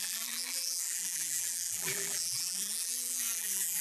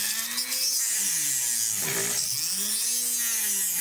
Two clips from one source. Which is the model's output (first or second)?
first